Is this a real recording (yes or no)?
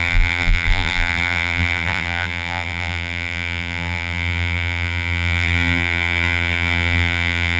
no